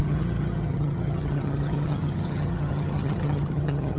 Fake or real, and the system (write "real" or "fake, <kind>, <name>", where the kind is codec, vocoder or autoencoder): fake, vocoder, HiFi-GAN